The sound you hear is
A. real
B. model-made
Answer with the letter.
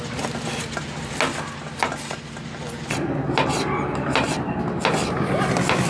A